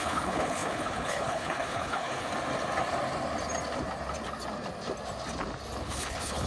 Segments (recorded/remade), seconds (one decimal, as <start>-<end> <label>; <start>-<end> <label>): 0.0-2.3 remade; 2.3-5.8 recorded; 5.8-6.5 remade